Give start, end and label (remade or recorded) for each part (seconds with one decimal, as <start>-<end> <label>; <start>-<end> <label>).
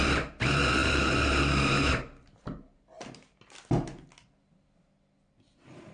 0.0-5.9 recorded